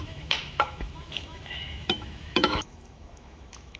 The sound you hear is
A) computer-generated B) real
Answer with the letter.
A